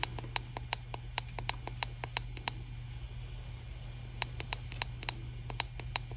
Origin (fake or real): real